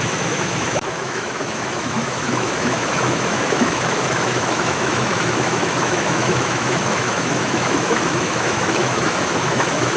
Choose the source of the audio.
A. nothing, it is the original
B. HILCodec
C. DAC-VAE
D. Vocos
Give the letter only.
C